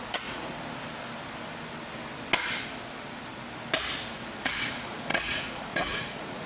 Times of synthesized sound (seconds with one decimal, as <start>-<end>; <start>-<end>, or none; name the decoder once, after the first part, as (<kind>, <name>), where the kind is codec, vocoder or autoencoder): 0.0-0.5 (vocoder, Vocos); 4.4-6.5